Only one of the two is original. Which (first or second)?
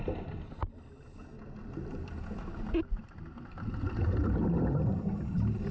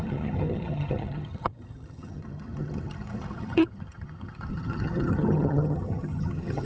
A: first